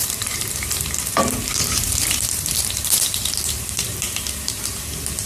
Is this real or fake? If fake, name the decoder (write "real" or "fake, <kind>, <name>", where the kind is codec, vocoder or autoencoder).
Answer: fake, vocoder, BigVGAN v2